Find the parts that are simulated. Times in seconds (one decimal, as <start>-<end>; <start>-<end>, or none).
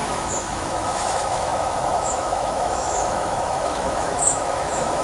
0.0-5.0